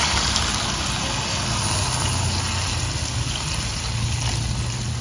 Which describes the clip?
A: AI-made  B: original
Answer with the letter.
B